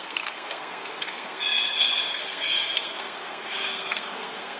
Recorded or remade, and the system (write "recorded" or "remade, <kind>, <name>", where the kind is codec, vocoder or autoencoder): remade, codec, SNAC